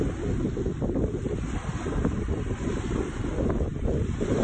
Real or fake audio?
real